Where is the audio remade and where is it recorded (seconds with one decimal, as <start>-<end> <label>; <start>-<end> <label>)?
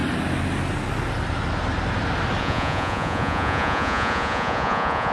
0.0-2.4 recorded; 2.4-5.1 remade